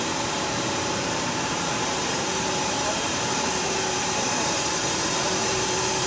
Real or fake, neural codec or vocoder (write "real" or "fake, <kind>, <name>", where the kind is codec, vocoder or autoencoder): fake, vocoder, BigVGAN v2